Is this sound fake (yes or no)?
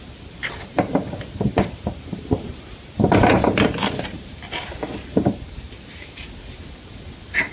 yes